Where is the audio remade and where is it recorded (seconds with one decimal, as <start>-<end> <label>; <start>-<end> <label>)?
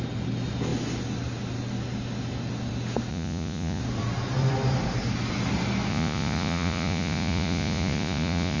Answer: 0.0-3.1 recorded; 3.1-3.8 remade; 3.8-5.9 recorded; 5.9-8.6 remade